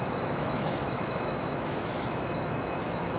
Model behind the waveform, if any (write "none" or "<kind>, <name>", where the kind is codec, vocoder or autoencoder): autoencoder, DAC-VAE